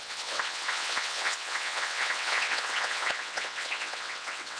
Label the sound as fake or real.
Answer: fake